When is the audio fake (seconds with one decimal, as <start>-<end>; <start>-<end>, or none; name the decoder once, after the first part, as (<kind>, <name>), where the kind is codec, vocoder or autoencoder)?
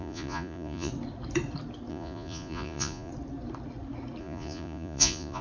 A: 0.0-0.9 (vocoder, Vocos); 1.9-3.1; 4.2-5.4